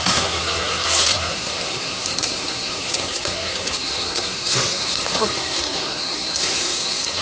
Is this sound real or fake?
fake